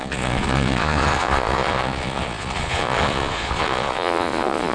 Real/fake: fake